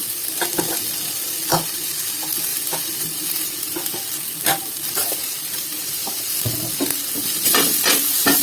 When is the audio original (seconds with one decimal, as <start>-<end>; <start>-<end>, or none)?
0.0-2.5; 3.6-5.0; 6.2-8.4

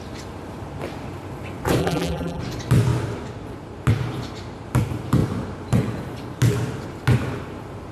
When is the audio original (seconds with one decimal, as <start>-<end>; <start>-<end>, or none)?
0.0-1.8; 2.4-7.9

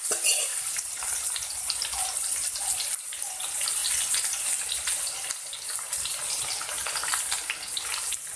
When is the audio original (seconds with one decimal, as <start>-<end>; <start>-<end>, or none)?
0.0-8.4

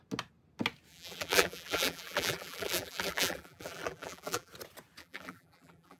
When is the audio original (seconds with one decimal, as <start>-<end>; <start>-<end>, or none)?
0.0-0.9; 4.5-5.0

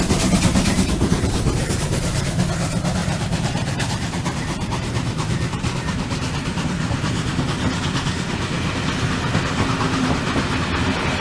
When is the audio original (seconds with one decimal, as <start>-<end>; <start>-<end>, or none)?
0.0-0.5; 2.4-3.0; 7.4-11.2

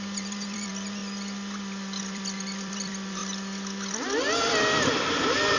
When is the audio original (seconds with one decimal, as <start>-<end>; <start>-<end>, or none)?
1.0-2.0; 3.2-4.6

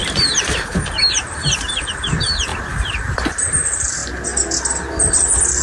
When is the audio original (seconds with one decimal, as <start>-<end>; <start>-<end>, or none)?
4.0-4.9